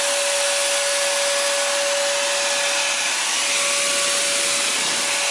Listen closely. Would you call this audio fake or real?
real